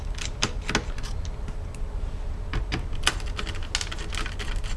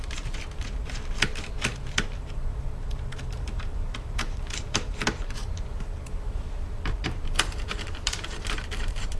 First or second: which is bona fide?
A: first